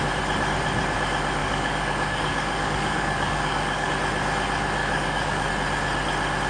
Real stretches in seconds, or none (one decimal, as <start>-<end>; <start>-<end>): 0.0-1.4; 3.9-4.8; 5.5-6.5